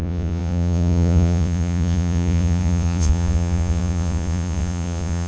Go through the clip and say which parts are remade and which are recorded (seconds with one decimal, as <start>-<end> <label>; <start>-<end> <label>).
0.0-5.3 remade